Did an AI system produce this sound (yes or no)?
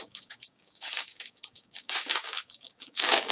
yes